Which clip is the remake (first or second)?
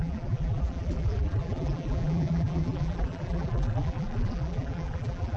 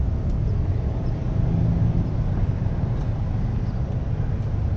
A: first